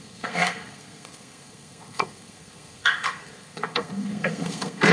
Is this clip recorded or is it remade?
remade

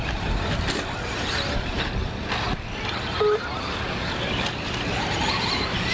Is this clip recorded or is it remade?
recorded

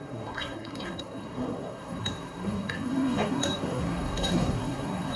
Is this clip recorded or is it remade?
remade